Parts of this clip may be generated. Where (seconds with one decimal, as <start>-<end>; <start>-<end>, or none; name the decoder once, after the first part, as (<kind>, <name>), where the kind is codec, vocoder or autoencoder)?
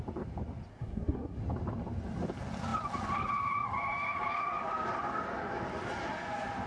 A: 0.7-1.4 (codec, SNAC)